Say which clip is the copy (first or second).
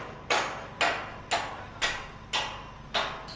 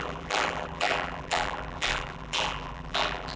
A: second